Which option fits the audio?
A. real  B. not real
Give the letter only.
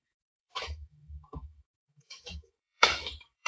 B